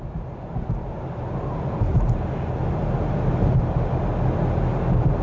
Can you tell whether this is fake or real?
real